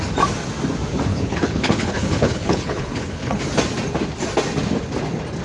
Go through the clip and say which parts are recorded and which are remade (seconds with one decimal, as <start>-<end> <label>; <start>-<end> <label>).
0.0-1.1 recorded; 1.1-3.4 remade; 3.4-5.4 recorded